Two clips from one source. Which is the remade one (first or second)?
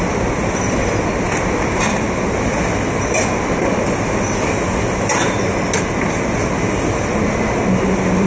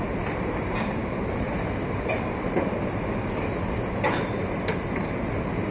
second